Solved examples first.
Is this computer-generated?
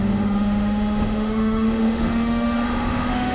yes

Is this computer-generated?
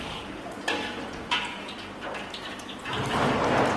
yes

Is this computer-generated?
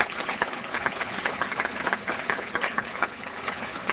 yes